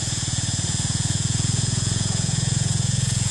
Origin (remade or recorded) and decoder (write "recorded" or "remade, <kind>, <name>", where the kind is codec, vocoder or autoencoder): remade, vocoder, Vocos